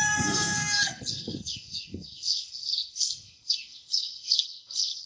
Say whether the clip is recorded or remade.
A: remade